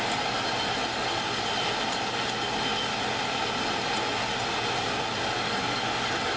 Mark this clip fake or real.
real